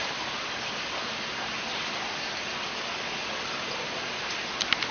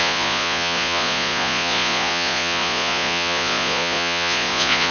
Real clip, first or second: first